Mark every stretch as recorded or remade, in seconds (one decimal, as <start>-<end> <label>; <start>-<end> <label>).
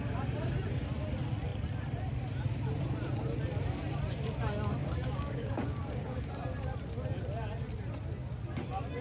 0.0-4.8 recorded; 4.8-6.3 remade; 6.3-9.0 recorded